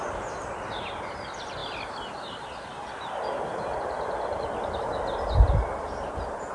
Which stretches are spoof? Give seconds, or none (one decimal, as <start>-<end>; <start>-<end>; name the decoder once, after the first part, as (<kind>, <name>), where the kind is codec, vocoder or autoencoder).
none